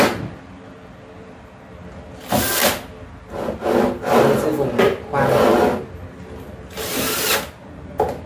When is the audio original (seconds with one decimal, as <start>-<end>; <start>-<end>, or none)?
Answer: 0.0-8.3